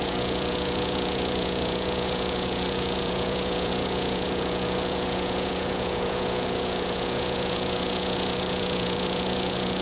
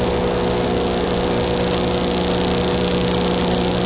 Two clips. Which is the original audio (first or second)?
second